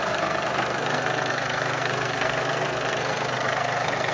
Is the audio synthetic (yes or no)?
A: yes